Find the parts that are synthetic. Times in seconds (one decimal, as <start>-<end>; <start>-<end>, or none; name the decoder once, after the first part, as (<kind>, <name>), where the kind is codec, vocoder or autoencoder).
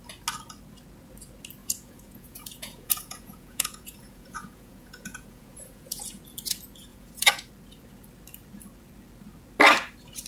1.6-6.2 (vocoder, Vocos); 6.9-7.5